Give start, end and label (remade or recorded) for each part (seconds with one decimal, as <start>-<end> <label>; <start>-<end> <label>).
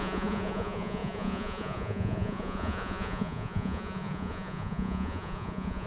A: 0.0-5.9 remade